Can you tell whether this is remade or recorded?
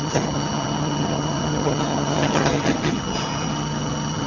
remade